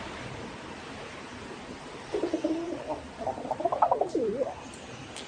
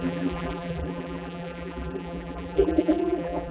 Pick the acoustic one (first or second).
first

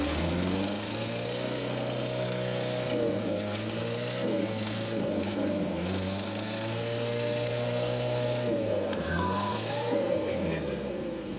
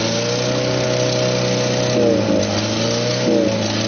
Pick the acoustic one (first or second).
second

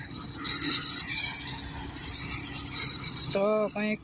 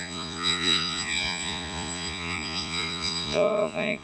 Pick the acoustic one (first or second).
first